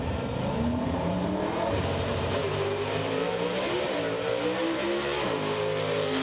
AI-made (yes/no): yes